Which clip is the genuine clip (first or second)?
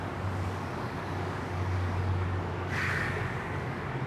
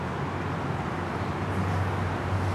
second